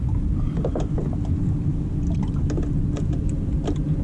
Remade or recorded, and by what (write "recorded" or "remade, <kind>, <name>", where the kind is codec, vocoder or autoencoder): recorded